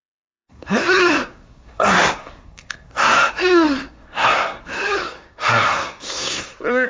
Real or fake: fake